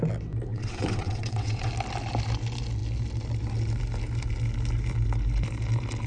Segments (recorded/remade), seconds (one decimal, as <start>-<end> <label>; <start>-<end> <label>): 0.0-0.5 recorded; 0.5-1.7 remade; 1.7-6.1 recorded